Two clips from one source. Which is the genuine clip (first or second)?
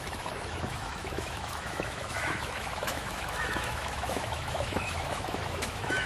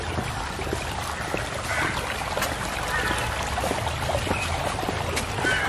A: second